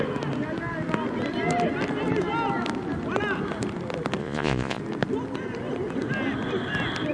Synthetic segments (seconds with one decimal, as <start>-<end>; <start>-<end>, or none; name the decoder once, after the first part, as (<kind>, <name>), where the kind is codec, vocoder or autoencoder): 4.2-4.8 (vocoder, Vocos)